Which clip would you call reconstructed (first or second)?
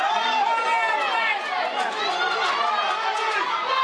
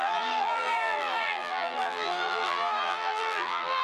second